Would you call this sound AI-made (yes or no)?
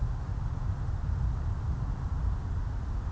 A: no